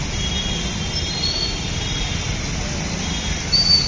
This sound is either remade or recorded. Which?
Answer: recorded